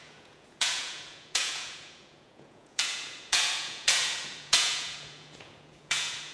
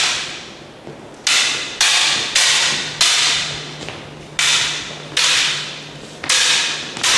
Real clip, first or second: second